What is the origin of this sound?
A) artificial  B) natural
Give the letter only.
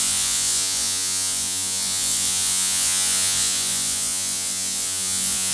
A